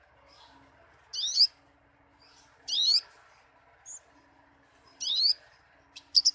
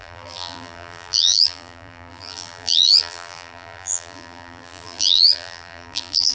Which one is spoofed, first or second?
second